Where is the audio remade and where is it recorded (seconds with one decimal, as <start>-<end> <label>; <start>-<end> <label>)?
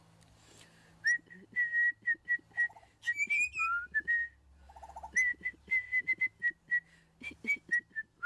0.0-5.3 recorded; 5.3-5.8 remade; 5.8-8.3 recorded